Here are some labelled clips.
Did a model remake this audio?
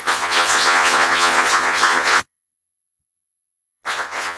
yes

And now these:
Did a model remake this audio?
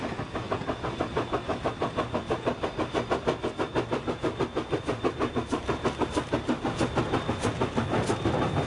no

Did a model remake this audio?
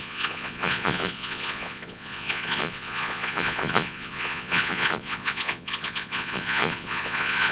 yes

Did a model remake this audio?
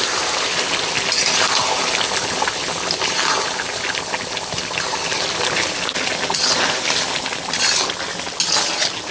no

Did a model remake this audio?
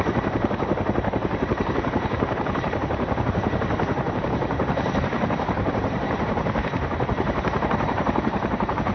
yes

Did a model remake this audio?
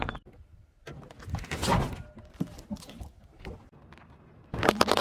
no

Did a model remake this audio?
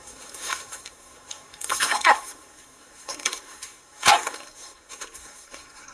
yes